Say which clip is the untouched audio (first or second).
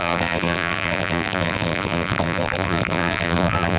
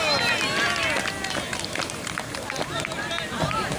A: second